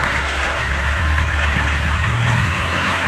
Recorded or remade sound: remade